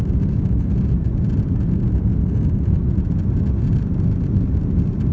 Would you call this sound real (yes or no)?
yes